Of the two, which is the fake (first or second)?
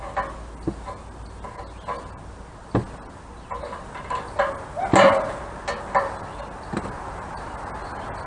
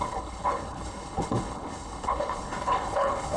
second